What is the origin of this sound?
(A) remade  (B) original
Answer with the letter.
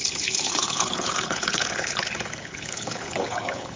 A